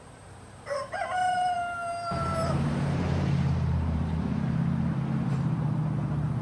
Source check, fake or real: fake